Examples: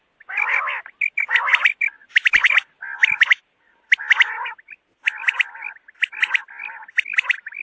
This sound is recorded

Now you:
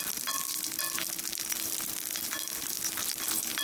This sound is recorded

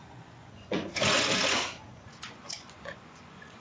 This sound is remade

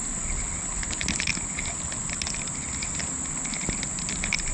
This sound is recorded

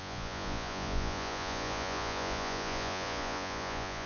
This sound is remade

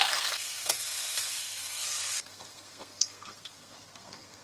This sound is remade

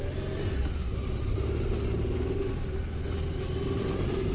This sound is recorded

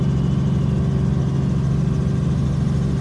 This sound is recorded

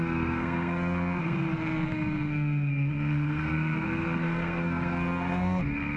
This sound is remade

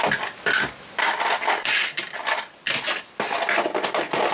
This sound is recorded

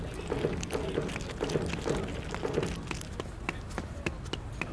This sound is recorded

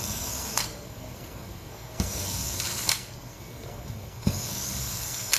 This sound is remade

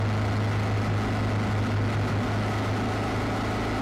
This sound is recorded